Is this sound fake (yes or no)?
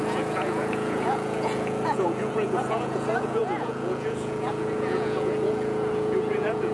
yes